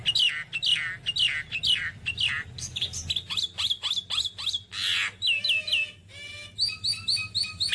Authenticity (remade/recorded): recorded